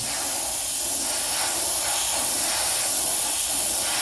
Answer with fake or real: real